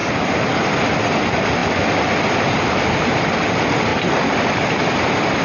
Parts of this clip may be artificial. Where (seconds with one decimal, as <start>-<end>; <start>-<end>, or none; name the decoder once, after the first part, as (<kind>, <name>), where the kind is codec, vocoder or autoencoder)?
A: none

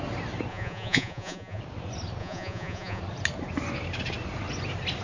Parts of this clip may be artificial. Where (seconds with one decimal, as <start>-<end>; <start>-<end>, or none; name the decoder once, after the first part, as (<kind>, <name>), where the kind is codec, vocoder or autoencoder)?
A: 0.5-1.6 (vocoder, Vocos); 2.2-3.0

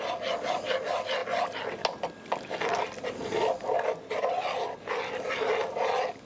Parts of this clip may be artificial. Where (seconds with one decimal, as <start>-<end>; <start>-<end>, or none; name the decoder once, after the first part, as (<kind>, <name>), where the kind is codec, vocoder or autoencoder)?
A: none

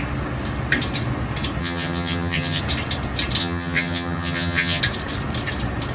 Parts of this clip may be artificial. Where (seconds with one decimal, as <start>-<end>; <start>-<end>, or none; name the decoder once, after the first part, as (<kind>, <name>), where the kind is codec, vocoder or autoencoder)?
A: 1.6-2.6 (vocoder, HiFi-GAN); 3.4-4.8

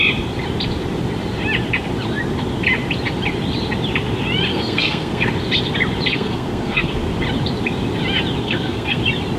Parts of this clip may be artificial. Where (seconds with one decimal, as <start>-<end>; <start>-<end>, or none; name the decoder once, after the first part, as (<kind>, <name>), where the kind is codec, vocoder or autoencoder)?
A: 4.5-5.3 (codec, SNAC); 6.1-7.0; 8.4-9.0

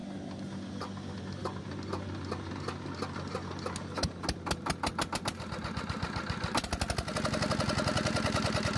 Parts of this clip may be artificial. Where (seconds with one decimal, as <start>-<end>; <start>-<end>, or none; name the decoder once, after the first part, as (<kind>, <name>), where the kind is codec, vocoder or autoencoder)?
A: none

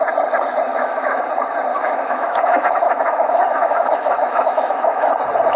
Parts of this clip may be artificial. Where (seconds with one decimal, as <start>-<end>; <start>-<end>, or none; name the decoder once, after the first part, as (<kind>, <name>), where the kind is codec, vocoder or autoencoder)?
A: 0.7-1.2 (autoencoder, DAC-VAE); 1.7-5.1